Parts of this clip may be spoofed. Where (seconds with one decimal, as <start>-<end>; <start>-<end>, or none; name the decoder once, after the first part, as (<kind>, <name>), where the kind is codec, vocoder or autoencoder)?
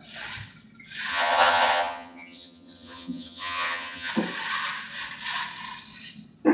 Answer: 1.1-4.1 (vocoder, HiFi-GAN)